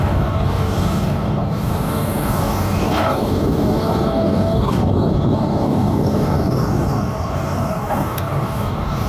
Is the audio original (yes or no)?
no